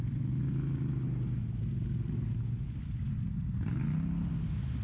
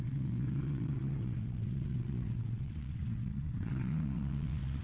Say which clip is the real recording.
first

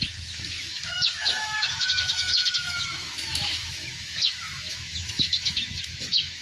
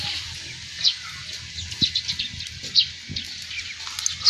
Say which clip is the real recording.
second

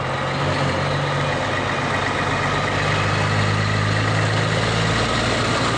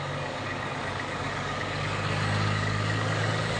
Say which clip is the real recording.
first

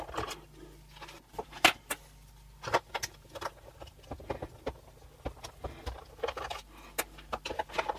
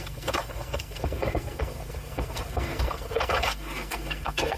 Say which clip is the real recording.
first